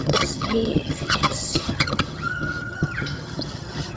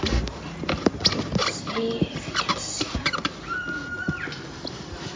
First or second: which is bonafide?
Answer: second